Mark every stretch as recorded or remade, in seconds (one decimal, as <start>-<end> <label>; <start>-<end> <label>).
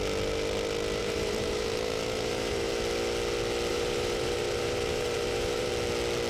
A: 0.0-1.0 recorded; 1.0-2.7 remade; 2.7-3.7 recorded; 3.7-5.7 remade; 5.7-6.3 recorded